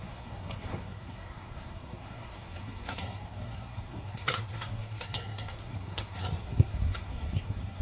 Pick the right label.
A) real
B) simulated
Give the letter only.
B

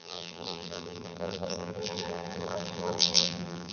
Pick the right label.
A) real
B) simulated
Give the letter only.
B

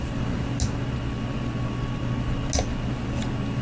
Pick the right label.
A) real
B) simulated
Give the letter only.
A